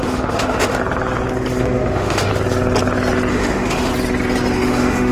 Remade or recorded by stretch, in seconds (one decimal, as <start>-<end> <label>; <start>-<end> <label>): 0.0-0.8 remade; 0.8-1.6 recorded; 1.6-2.3 remade; 2.3-3.3 recorded; 3.3-3.9 remade; 3.9-4.5 recorded; 4.5-5.1 remade